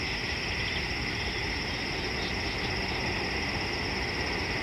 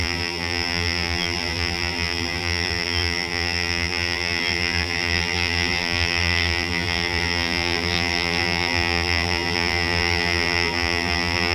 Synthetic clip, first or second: second